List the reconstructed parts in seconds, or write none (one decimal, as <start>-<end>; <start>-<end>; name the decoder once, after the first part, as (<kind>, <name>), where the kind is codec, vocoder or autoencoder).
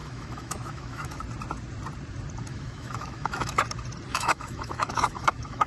0.0-1.2 (autoencoder, DAC-VAE); 2.5-3.6; 4.1-5.7